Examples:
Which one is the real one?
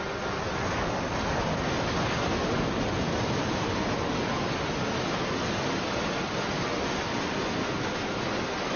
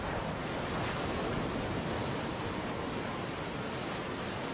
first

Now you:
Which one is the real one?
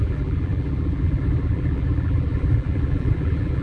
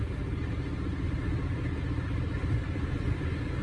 second